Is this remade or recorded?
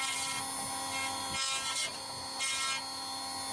recorded